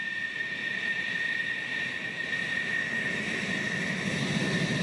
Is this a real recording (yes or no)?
yes